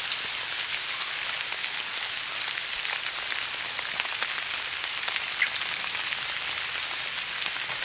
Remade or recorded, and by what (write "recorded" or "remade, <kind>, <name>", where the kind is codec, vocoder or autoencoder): recorded